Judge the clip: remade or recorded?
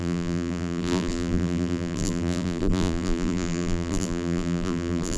remade